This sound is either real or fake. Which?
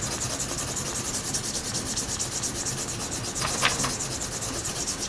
real